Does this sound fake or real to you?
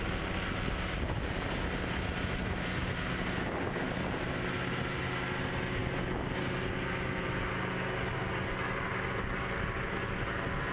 real